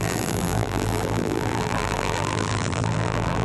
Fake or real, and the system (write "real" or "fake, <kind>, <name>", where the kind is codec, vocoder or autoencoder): fake, vocoder, BigVGAN v2